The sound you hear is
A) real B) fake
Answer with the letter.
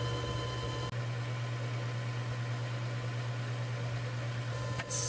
A